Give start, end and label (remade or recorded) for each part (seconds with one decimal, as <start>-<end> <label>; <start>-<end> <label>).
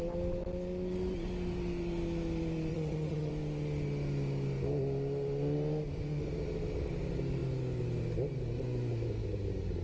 0.0-2.7 recorded; 2.7-3.3 remade; 3.3-9.8 recorded